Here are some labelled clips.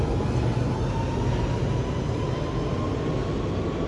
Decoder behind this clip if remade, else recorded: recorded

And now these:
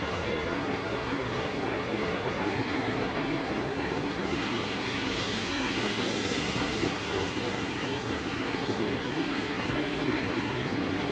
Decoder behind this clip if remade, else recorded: remade, codec, SNAC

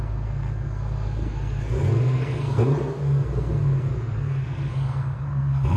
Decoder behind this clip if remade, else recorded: remade, codec, SNAC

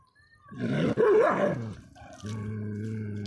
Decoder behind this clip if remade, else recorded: recorded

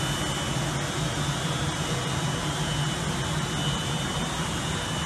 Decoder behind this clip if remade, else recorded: recorded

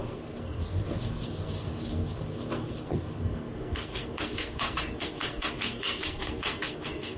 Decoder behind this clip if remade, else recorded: remade, codec, SNAC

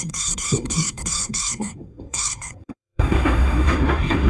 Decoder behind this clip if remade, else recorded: remade, codec, SNAC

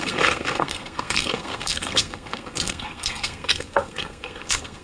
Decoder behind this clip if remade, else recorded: remade, codec, SNAC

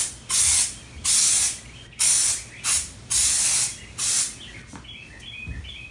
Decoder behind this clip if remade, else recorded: recorded